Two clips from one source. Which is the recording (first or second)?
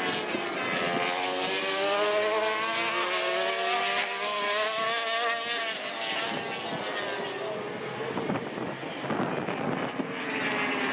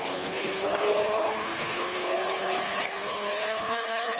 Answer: first